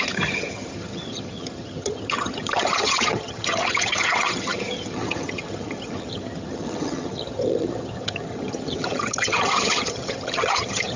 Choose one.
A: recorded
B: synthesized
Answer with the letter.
B